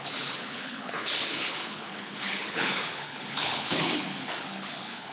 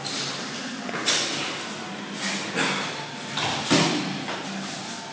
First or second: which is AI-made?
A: first